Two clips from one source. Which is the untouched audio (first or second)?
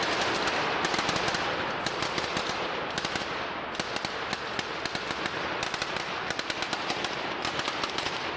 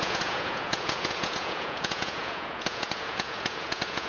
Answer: first